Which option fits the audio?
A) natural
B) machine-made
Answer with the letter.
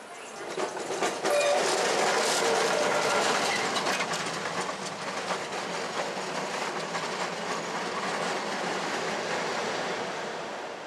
A